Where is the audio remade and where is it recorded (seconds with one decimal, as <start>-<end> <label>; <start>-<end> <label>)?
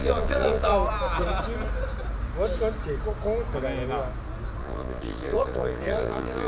0.0-0.7 remade; 0.7-4.6 recorded; 4.6-6.5 remade